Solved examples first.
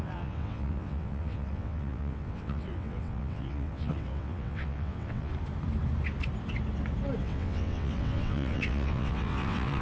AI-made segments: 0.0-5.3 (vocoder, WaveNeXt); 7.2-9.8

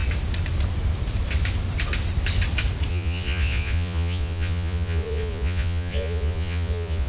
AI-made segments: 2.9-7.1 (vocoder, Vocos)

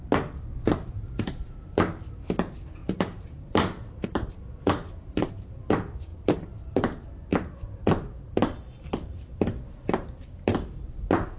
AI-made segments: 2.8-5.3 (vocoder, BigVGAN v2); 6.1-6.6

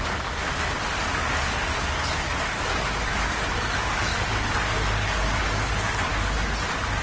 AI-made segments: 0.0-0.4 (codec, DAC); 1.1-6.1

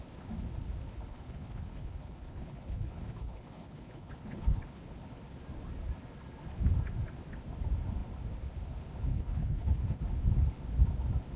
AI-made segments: 1.1-4.8 (codec, HILCodec); 9.1-10.0

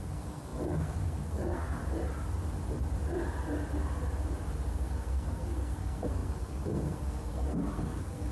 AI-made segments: 0.0-1.8 (codec, SNAC); 4.7-8.3